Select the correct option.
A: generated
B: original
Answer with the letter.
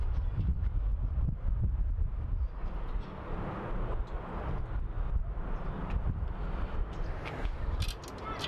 B